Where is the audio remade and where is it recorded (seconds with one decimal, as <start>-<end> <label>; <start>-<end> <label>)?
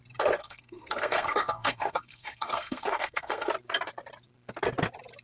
0.0-0.4 recorded; 0.4-3.5 remade; 3.5-5.2 recorded